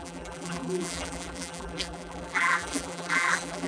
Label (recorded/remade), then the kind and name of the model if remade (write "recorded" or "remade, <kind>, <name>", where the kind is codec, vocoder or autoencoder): remade, vocoder, BigVGAN v2